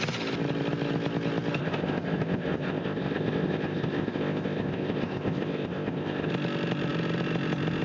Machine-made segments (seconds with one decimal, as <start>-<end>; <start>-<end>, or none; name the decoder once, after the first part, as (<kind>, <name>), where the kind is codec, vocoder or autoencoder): 1.6-6.3 (codec, ZipCodec)